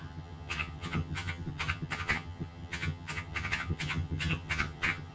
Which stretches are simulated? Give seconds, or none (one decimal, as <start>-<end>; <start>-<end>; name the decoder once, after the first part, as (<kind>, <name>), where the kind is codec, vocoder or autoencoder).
0.0-5.1 (vocoder, HiFi-GAN)